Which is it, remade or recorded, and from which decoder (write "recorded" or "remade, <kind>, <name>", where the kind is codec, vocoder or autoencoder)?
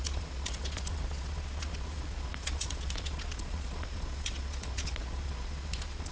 remade, vocoder, Vocos